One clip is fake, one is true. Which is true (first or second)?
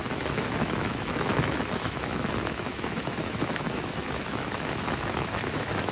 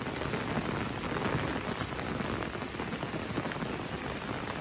second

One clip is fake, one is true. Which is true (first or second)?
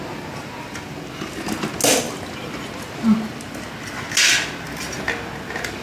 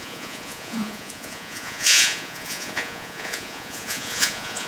first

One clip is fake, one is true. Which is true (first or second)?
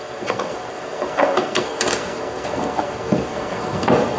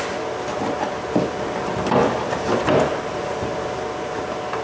second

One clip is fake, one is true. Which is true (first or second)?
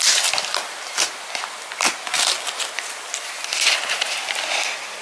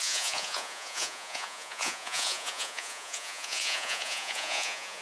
first